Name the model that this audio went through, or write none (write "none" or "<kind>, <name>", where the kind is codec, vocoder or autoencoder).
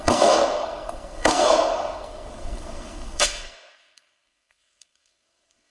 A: codec, SNAC